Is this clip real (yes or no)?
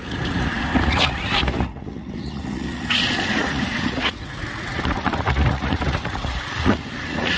no